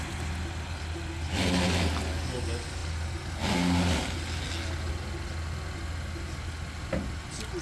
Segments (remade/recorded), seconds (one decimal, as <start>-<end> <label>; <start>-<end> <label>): 0.0-7.6 recorded